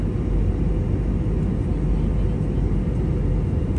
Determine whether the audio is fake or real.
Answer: real